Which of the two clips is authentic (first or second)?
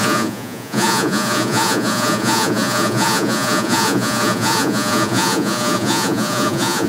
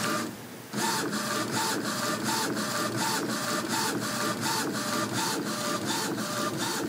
second